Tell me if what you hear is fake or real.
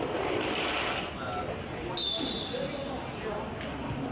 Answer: real